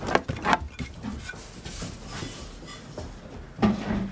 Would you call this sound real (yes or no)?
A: yes